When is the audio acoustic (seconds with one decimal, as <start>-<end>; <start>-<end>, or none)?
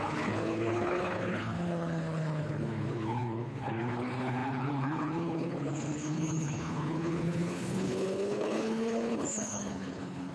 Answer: none